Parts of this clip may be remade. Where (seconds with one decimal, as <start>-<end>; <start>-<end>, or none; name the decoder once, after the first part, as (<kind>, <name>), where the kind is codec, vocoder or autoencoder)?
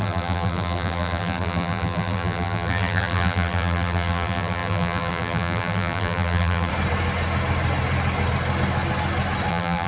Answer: 0.0-6.7 (vocoder, BigVGAN v2); 9.5-9.9